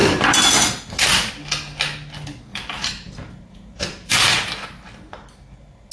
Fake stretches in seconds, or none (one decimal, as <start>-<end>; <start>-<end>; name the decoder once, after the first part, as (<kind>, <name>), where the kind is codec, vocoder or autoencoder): 0.0-1.3 (vocoder, BigVGAN v2); 2.5-5.1